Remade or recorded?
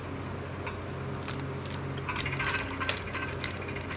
recorded